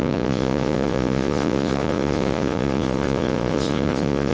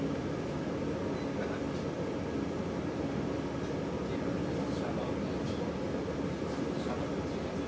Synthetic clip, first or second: first